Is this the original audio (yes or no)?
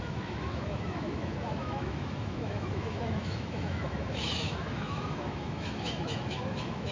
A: no